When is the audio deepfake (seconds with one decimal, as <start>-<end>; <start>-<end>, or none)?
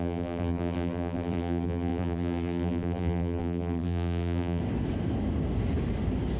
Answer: 0.0-4.6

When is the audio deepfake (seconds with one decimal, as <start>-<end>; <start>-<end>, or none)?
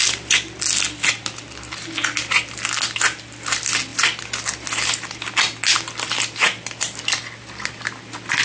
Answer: none